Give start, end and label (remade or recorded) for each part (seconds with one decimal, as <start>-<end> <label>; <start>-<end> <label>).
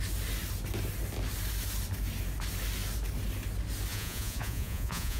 0.0-3.9 recorded; 3.9-5.2 remade